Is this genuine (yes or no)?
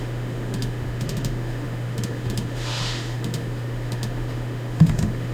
no